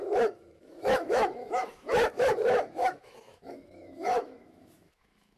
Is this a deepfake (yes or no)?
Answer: yes